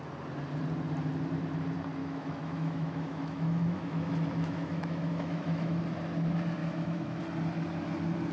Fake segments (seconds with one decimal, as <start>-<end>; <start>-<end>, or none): 2.0-5.8; 6.6-7.2